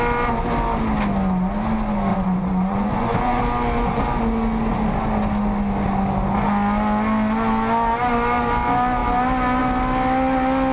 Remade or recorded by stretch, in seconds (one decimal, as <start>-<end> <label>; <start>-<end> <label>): 0.0-2.1 recorded; 2.1-3.4 remade; 3.4-10.7 recorded